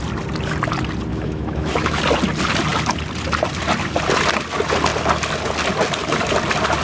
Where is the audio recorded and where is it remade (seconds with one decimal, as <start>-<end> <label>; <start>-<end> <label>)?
0.0-1.1 recorded; 1.1-2.0 remade; 2.0-6.8 recorded